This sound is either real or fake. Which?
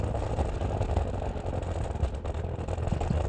real